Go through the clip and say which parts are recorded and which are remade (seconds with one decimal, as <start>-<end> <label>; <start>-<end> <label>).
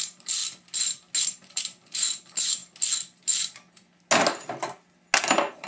0.0-0.4 remade; 0.4-1.2 recorded; 1.2-2.6 remade; 2.6-5.2 recorded; 5.2-5.7 remade